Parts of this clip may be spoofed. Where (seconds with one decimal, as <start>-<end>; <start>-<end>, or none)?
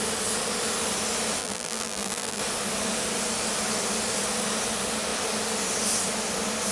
1.4-2.4